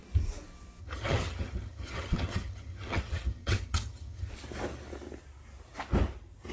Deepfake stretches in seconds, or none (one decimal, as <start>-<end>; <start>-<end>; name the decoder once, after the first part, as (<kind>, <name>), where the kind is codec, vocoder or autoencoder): 0.8-4.3 (vocoder, HiFi-GAN)